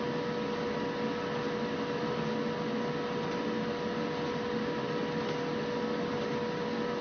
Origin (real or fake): real